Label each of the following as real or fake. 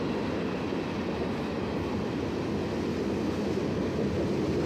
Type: real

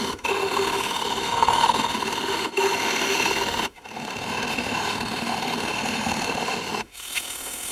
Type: fake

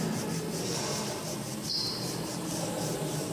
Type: real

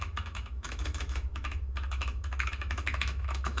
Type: fake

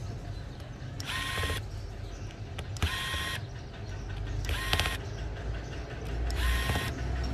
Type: real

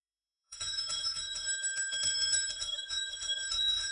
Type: fake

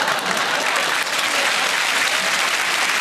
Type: real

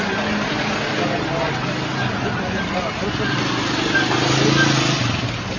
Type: real